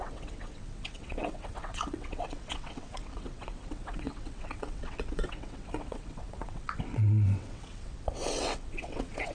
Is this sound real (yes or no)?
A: no